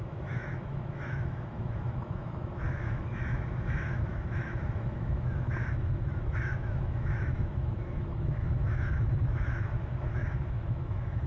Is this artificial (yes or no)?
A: yes